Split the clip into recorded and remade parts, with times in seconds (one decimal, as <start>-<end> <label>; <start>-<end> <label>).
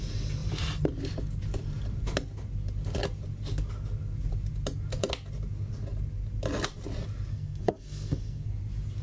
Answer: 0.0-7.3 recorded; 7.3-8.5 remade; 8.5-9.0 recorded